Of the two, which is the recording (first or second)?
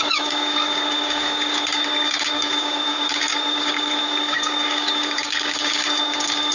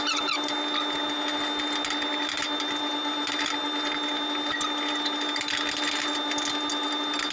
second